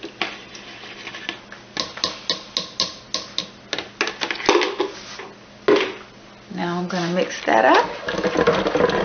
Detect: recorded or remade recorded